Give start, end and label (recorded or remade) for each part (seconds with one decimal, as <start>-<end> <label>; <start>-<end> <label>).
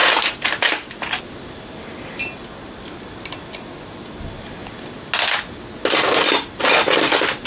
0.0-7.5 recorded